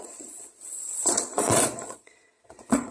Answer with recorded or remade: remade